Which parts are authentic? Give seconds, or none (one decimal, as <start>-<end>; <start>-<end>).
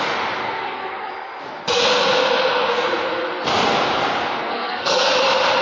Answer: 0.0-0.4; 1.1-4.4; 5.1-5.6